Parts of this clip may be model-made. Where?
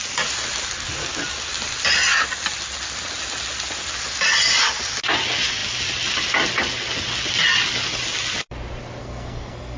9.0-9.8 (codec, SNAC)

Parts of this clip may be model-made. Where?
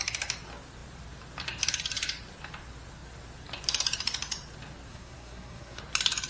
4.9-5.8 (codec, SNAC)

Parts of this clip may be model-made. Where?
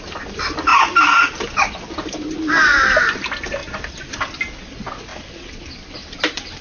0.7-2.1 (vocoder, BigVGAN v2); 3.6-4.4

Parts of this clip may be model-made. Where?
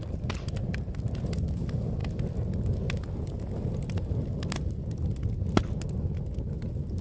none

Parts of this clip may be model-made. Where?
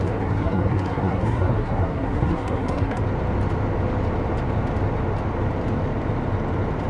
0.0-3.0 (codec, SNAC)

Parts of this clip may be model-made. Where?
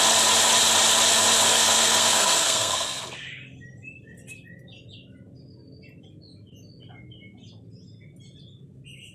1.5-3.0 (codec, SNAC)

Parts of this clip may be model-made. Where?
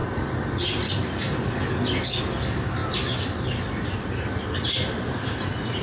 2.8-4.1 (vocoder, BigVGAN v2)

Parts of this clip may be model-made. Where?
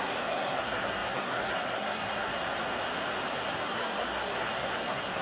0.0-2.3 (codec, SNAC); 3.4-5.2